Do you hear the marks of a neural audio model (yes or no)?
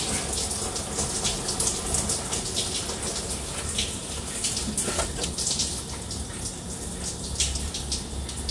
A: no